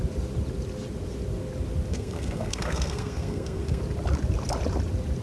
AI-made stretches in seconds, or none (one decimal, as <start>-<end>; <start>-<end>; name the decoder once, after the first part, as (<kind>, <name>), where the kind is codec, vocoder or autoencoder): 1.9-3.8 (codec, SNAC)